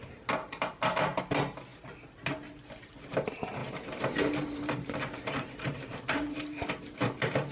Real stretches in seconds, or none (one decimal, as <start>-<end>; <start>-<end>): 0.0-0.4; 1.2-3.6; 6.6-7.5